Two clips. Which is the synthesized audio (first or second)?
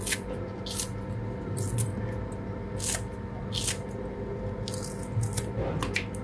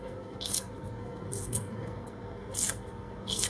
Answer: second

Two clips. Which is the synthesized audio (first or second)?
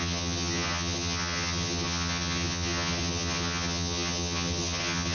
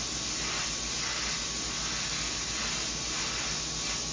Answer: first